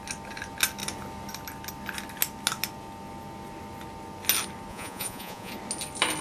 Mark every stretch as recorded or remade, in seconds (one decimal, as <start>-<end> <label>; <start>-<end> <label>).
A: 0.0-4.7 recorded; 4.7-5.5 remade; 5.5-6.2 recorded